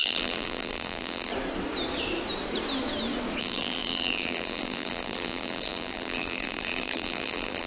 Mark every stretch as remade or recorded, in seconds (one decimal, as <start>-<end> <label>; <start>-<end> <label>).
0.0-1.3 remade; 1.3-3.4 recorded; 3.4-7.7 remade